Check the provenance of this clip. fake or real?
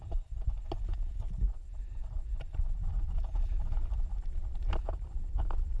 real